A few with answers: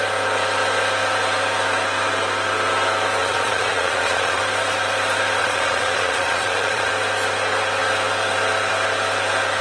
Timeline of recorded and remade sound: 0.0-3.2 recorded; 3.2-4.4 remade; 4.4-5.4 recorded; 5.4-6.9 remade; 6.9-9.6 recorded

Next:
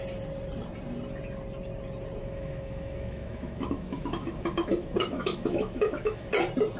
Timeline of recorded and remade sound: 0.0-2.2 recorded; 2.2-6.3 remade; 6.3-6.8 recorded

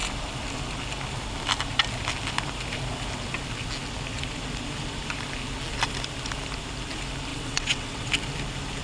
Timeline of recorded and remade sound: 0.0-7.3 recorded; 7.3-8.1 remade; 8.1-8.8 recorded

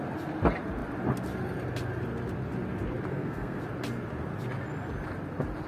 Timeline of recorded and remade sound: 0.0-3.1 recorded; 3.1-3.6 remade; 3.6-5.7 recorded

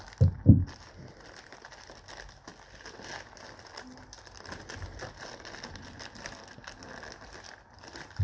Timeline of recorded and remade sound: 0.0-8.2 recorded

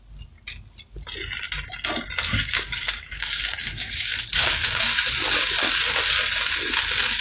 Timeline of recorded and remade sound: 0.0-2.3 recorded; 2.3-4.8 remade; 4.8-7.2 recorded

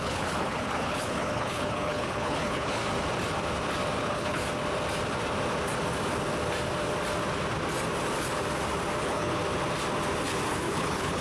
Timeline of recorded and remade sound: 0.0-2.8 remade; 2.8-4.0 recorded; 4.0-4.4 remade; 4.4-9.0 recorded; 9.0-9.4 remade; 9.4-10.5 recorded; 10.5-11.2 remade